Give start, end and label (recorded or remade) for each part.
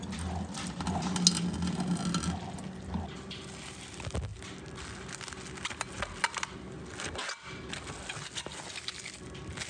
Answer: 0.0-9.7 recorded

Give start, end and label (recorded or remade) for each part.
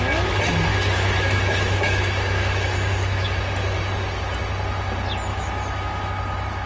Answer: 0.0-0.7 recorded; 0.7-3.3 remade; 3.3-5.3 recorded; 5.3-6.1 remade; 6.1-6.7 recorded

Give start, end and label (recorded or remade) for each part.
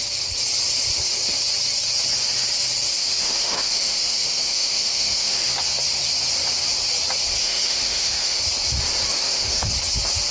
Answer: 0.0-2.9 recorded; 2.9-5.5 remade; 5.5-7.4 recorded; 7.4-8.4 remade; 8.4-9.1 recorded; 9.1-9.7 remade; 9.7-10.3 recorded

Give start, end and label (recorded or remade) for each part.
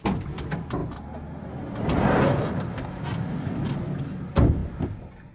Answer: 0.0-5.3 recorded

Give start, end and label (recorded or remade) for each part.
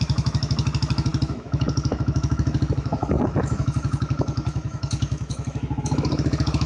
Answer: 0.0-6.7 remade